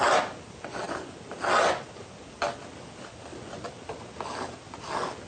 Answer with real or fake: real